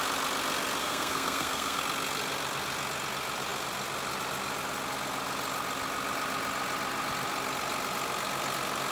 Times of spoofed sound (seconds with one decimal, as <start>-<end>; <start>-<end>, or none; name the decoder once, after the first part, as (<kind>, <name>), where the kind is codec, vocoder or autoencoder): 0.8-1.8 (codec, SNAC)